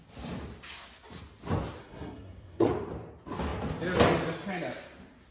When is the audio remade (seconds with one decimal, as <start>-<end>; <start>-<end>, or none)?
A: 1.8-2.7